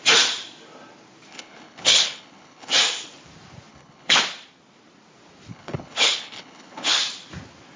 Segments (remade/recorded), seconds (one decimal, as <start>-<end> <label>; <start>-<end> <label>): 0.0-1.3 recorded; 1.3-2.7 remade; 2.7-3.7 recorded; 3.7-4.2 remade; 4.2-5.5 recorded; 5.5-7.0 remade; 7.0-7.8 recorded